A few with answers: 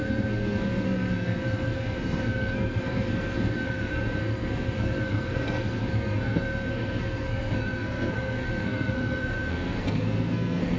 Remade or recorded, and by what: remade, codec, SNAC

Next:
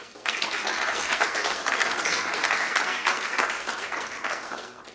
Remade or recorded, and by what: remade, codec, SNAC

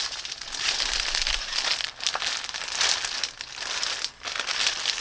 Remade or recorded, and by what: recorded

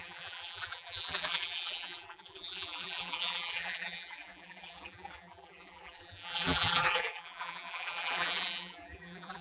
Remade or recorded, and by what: remade, vocoder, BigVGAN v2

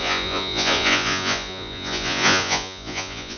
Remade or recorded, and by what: remade, vocoder, Vocos